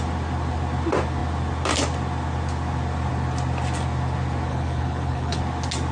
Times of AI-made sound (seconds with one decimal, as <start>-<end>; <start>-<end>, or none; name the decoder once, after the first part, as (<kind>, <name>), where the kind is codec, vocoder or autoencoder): 4.5-5.4 (codec, HILCodec)